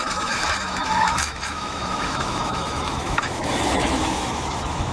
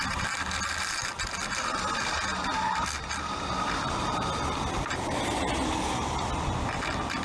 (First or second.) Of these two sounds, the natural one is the second